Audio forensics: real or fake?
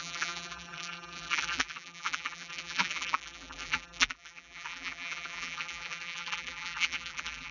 fake